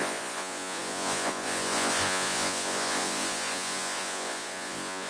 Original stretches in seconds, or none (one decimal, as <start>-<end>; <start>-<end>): none

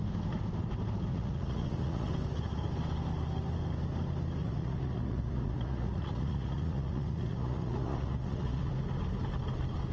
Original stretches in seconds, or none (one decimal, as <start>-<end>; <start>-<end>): 0.0-1.1; 2.1-4.4; 8.7-9.9

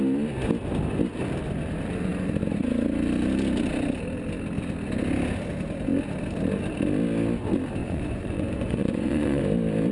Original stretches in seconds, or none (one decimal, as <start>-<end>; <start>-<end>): 0.0-7.8; 9.4-9.9

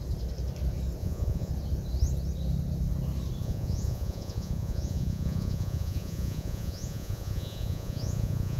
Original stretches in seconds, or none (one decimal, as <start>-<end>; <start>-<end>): 0.0-1.0; 1.5-3.4